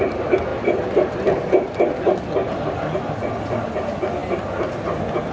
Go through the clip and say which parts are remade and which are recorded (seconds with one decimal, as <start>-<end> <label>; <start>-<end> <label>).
0.0-5.3 recorded